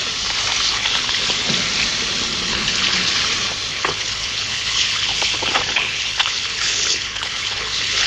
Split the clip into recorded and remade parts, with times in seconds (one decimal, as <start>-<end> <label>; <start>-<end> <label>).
0.0-0.7 recorded; 0.7-1.5 remade; 1.5-2.5 recorded; 2.5-3.1 remade; 3.1-3.7 recorded; 3.7-8.1 remade

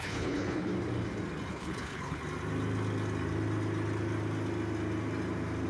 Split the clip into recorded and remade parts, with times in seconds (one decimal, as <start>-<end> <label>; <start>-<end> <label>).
0.0-0.7 remade; 0.7-1.5 recorded; 1.5-2.2 remade; 2.2-5.7 recorded

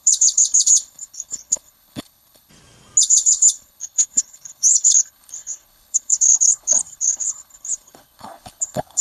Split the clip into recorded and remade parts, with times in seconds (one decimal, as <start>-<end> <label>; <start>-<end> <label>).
0.0-2.5 remade; 2.5-3.0 recorded; 3.0-9.0 remade

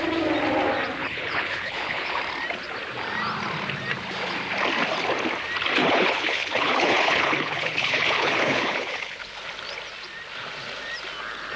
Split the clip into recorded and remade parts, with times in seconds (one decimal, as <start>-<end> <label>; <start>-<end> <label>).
0.0-1.0 recorded; 1.0-2.2 remade; 2.2-5.8 recorded; 5.8-9.3 remade; 9.3-11.6 recorded